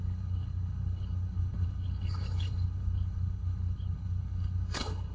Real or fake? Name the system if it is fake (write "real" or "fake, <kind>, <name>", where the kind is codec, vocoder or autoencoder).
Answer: fake, codec, HILCodec